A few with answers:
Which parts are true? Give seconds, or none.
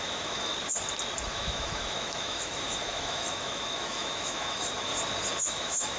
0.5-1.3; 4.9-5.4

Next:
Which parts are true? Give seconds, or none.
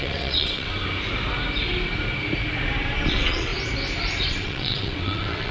0.7-3.1; 3.5-4.3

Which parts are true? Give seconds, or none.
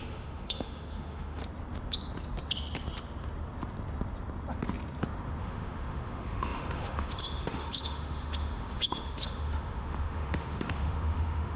1.4-5.4